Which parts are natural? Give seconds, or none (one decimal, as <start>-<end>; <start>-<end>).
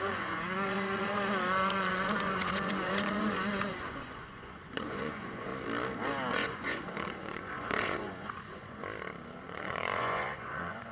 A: 5.5-6.3; 8.8-9.4